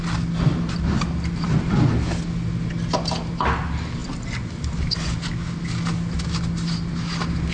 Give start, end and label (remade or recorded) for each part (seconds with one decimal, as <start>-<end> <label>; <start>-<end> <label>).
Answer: 0.0-7.5 recorded